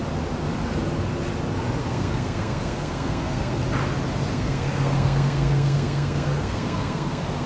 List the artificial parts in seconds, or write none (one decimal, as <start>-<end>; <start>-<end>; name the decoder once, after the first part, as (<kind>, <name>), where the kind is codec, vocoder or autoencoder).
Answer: 1.8-3.6 (codec, SNAC); 4.3-7.5